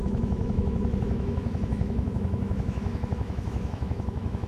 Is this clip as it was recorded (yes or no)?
no